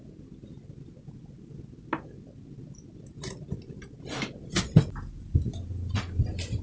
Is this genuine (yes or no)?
yes